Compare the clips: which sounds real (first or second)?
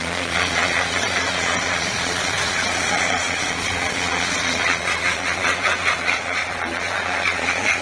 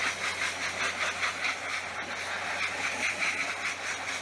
second